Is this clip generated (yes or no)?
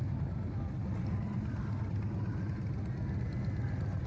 no